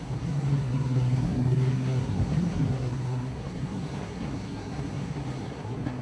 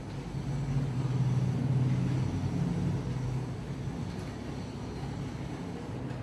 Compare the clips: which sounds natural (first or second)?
second